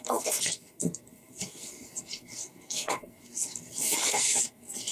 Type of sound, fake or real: fake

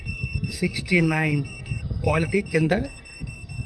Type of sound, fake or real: fake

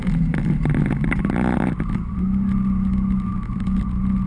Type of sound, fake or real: real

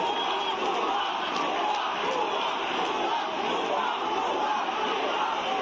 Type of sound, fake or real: real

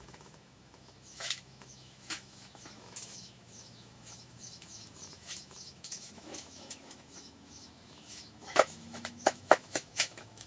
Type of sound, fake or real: fake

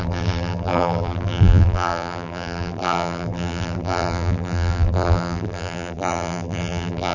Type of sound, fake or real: fake